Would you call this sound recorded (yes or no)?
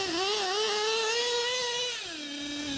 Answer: yes